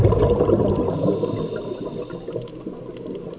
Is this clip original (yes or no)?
yes